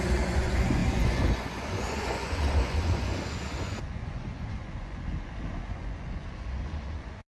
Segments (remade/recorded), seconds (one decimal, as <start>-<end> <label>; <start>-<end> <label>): 0.0-7.3 remade